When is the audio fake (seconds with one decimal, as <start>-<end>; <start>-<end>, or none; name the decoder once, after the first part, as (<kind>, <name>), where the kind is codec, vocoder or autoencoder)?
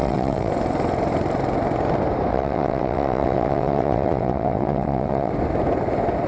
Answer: 0.0-0.5 (vocoder, WaveNeXt); 2.3-5.3